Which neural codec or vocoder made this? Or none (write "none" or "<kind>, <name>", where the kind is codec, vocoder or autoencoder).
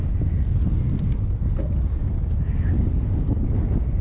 none